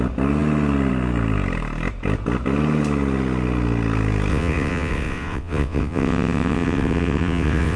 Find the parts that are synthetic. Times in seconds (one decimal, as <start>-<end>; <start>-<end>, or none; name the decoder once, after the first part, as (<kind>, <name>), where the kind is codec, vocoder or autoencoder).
4.3-7.8 (vocoder, WaveNeXt)